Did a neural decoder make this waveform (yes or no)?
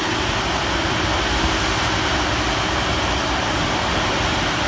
no